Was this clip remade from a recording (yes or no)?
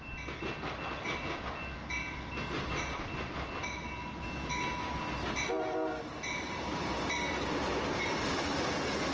no